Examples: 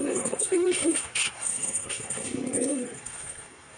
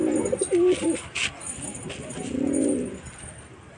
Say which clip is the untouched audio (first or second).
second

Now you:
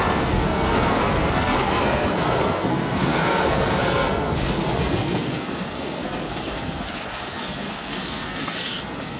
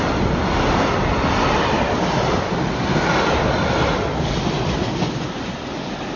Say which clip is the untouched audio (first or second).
second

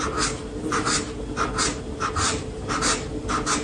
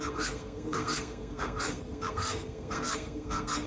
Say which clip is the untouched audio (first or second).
first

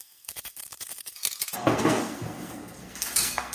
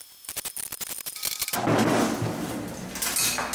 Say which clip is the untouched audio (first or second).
second